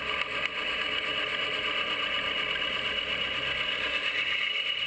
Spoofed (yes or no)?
no